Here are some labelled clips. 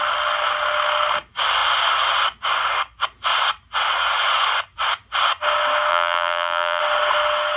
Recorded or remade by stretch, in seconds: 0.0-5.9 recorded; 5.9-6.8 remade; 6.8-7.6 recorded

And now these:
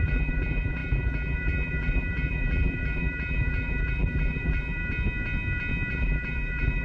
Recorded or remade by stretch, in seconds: 0.0-4.8 remade; 4.8-5.9 recorded; 5.9-6.8 remade

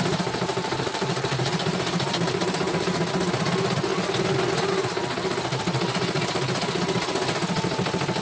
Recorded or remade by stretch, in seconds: 0.0-0.5 recorded; 0.5-2.6 remade; 2.6-8.2 recorded

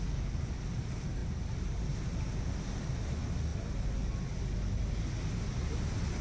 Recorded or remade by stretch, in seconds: 0.0-1.2 recorded; 1.2-2.4 remade; 2.4-3.5 recorded; 3.5-4.1 remade; 4.1-6.2 recorded

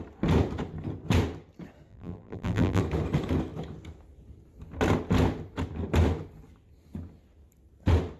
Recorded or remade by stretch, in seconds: 0.0-1.9 recorded; 1.9-2.8 remade; 2.8-8.2 recorded

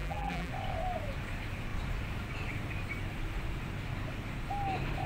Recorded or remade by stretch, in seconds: 0.0-0.5 remade; 0.5-5.1 recorded

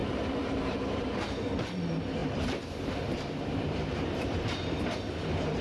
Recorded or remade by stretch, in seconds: 0.0-5.6 remade

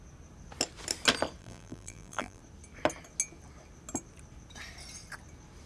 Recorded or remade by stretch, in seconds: 0.0-1.4 recorded; 1.4-2.4 remade; 2.4-5.7 recorded